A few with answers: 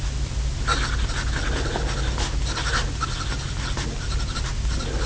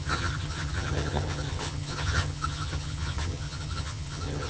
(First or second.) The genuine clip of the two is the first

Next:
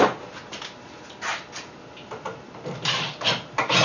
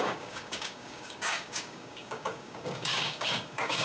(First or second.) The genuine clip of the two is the first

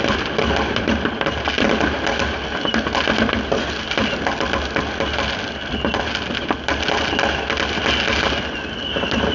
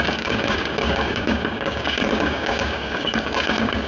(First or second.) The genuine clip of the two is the first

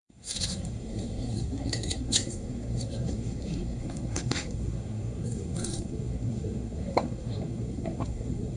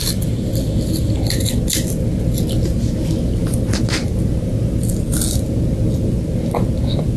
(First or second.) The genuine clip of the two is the second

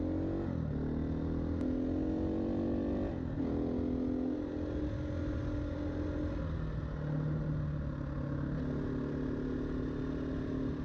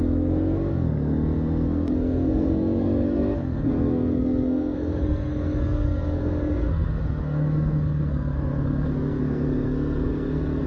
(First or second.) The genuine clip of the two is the first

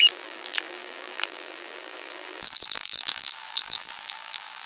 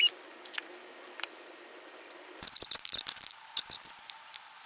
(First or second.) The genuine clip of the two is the second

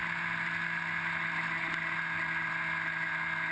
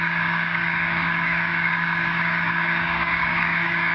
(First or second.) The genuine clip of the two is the first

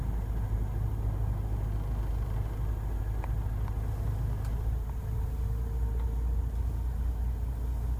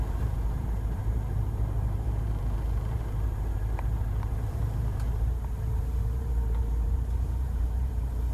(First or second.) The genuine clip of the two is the first